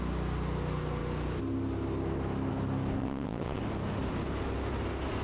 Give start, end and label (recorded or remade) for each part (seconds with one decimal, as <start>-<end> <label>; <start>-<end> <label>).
0.0-3.0 recorded; 3.0-3.6 remade; 3.6-5.2 recorded